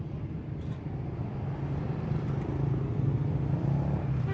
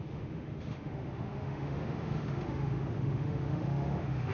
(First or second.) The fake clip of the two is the second